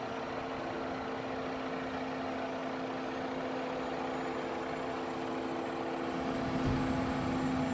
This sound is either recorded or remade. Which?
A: recorded